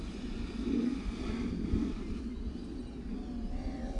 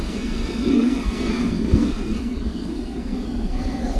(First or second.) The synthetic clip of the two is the second